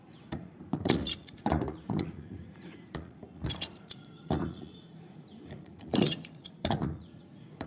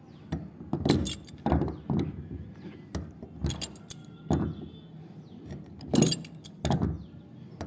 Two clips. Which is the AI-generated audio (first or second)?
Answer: first